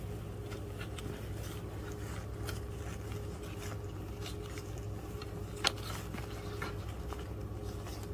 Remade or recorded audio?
recorded